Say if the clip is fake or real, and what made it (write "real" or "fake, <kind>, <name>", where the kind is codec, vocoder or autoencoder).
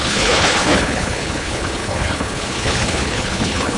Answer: fake, codec, HILCodec